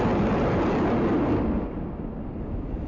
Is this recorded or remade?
recorded